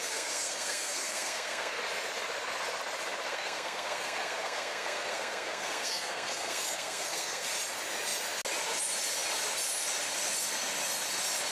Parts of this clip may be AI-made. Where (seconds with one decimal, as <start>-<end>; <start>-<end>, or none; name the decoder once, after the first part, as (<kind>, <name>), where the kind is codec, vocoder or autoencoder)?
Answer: 0.0-1.8 (codec, SNAC); 3.3-7.5